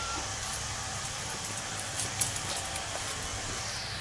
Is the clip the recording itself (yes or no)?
no